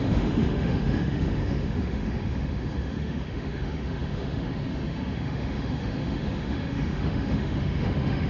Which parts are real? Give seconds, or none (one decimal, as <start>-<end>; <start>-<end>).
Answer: none